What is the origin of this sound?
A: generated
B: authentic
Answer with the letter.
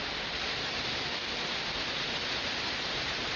B